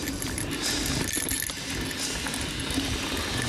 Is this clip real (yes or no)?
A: yes